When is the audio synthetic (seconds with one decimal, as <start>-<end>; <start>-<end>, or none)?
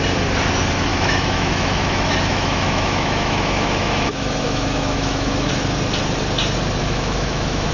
0.9-5.5; 6.8-7.7